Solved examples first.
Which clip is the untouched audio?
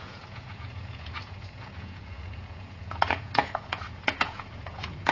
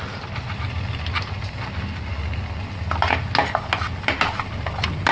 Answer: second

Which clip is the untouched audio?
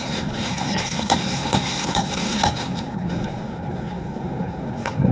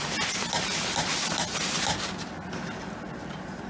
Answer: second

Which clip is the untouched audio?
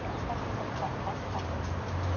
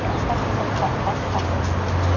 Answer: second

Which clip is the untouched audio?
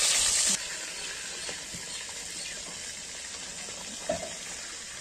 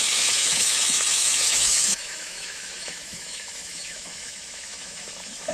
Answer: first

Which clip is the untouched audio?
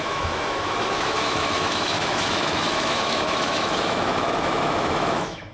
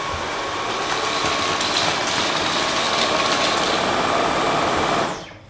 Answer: second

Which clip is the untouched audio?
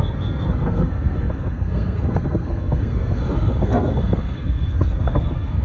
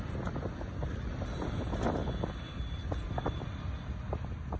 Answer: second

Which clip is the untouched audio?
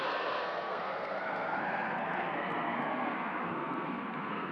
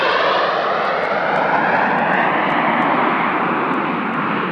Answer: second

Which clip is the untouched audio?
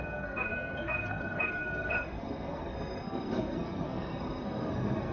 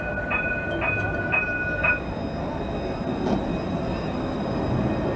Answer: second